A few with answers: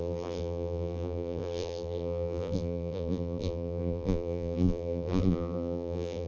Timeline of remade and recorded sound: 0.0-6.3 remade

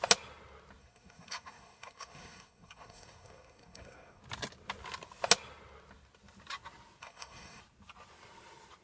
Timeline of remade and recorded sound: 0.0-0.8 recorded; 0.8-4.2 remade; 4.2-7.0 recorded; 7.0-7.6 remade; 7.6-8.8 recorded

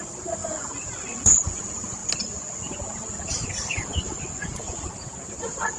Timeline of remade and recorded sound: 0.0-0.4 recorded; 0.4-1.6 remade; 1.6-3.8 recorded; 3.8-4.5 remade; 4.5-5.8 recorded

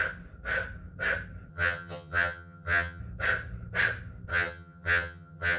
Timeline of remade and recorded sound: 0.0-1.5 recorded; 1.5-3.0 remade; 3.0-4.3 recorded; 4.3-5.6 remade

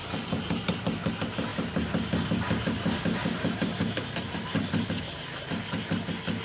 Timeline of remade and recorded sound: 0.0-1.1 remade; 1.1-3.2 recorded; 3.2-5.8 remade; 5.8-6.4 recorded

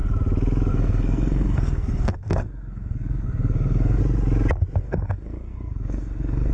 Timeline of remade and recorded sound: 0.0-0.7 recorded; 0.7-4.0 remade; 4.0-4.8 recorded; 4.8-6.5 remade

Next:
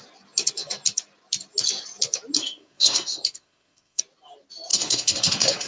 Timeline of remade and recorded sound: 0.0-2.4 recorded; 2.4-4.0 remade; 4.0-4.7 recorded; 4.7-5.7 remade